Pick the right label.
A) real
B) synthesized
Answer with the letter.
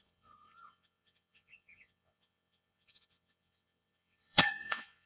B